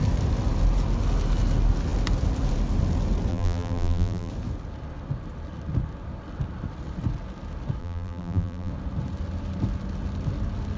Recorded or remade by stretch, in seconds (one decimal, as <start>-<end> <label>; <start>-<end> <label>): 0.0-3.3 recorded; 3.3-4.3 remade; 4.3-7.8 recorded; 7.8-8.7 remade; 8.7-10.8 recorded